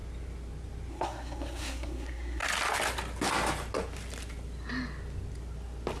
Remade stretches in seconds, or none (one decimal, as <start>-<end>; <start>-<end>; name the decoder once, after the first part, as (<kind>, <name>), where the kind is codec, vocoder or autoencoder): 0.9-2.4 (codec, SNAC)